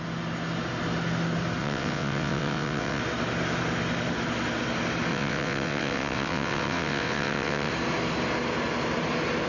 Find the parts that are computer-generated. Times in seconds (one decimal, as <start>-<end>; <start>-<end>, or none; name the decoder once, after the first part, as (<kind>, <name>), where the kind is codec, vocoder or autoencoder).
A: 1.6-3.0 (vocoder, WaveNeXt); 5.1-7.7